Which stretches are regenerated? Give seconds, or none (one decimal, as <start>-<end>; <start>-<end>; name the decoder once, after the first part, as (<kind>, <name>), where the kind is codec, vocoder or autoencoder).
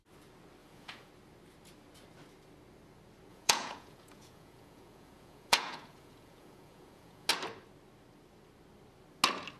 0.6-1.1 (vocoder, Vocos); 3.3-7.3